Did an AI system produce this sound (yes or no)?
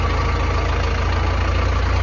no